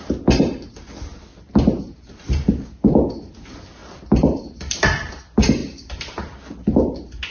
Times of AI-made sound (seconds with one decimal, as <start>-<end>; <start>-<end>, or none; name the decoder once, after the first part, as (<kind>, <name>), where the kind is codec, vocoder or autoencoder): 3.8-5.1 (vocoder, BigVGAN v2); 5.6-6.4